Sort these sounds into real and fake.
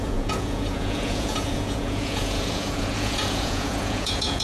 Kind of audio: fake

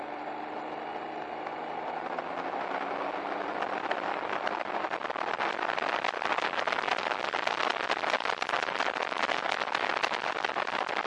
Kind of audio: real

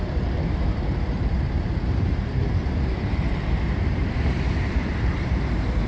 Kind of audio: fake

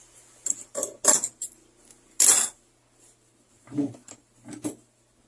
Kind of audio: real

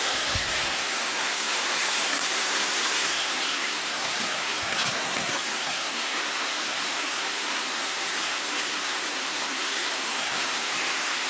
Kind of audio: fake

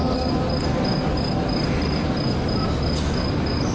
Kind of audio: real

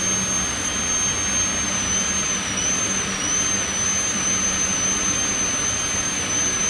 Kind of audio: real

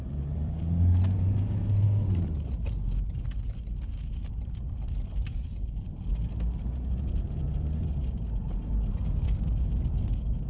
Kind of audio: real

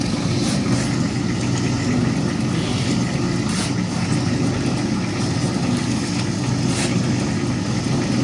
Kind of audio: real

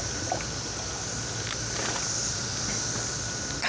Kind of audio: real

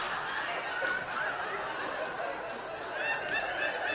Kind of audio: real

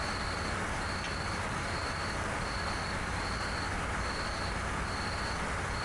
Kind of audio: real